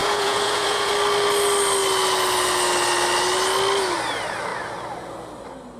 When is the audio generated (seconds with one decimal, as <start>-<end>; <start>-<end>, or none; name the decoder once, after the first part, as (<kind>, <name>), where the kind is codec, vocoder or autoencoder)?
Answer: 0.0-0.9 (vocoder, Vocos)